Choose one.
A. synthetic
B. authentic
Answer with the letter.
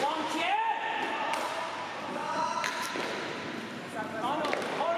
A